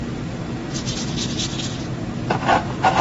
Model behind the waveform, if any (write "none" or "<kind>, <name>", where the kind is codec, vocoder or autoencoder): none